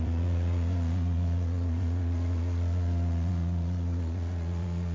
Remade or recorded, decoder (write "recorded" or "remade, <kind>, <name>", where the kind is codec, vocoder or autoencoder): remade, vocoder, Vocos